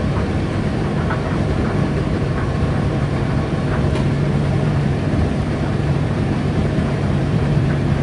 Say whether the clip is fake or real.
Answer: fake